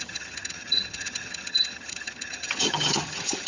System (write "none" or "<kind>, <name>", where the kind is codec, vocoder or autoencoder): vocoder, HiFi-GAN